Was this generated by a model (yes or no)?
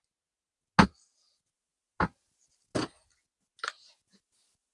no